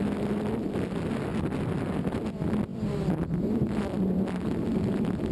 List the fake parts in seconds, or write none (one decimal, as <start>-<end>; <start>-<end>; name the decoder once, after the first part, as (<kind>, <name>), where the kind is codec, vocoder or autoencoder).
2.7-5.3 (vocoder, BigVGAN v2)